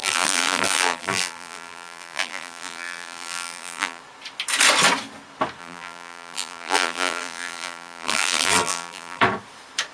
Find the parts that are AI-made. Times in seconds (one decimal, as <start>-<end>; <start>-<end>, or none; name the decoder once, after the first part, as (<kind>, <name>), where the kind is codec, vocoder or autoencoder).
0.0-4.0 (vocoder, BigVGAN v2); 5.6-9.2